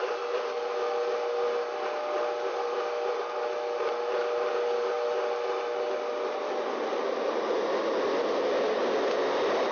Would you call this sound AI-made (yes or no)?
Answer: no